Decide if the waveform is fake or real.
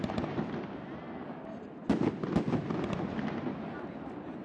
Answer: real